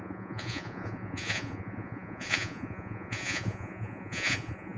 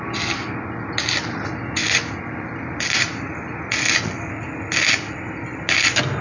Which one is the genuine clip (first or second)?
second